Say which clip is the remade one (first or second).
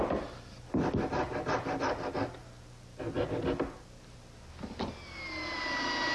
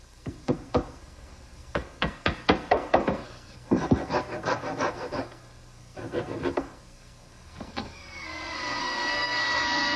second